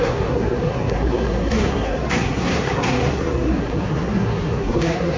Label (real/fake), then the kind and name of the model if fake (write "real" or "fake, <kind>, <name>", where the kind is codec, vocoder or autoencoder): fake, codec, SNAC